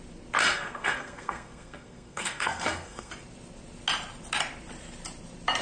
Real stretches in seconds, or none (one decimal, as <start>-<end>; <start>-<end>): 0.0-0.5; 3.1-5.6